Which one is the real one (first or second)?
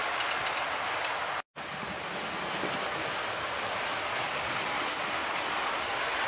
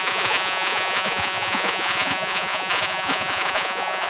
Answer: first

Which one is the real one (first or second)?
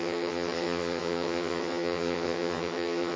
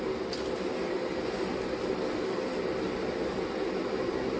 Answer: second